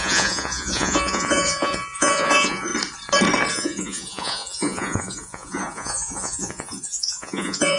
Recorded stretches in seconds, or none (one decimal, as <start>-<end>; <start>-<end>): 2.7-3.5